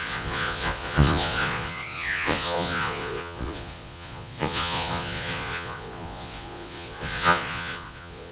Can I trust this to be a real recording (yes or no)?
no